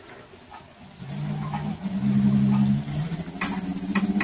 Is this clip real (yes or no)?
yes